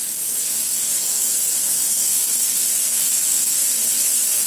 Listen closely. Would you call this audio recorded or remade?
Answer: remade